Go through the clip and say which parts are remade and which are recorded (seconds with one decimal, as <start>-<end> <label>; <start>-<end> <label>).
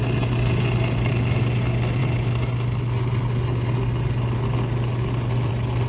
0.0-5.9 recorded